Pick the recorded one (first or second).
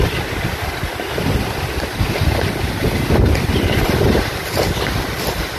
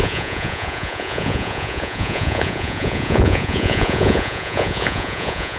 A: first